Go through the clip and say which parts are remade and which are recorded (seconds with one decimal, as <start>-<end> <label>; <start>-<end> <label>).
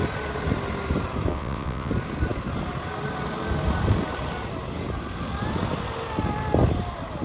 0.0-1.3 recorded; 1.3-1.9 remade; 1.9-7.2 recorded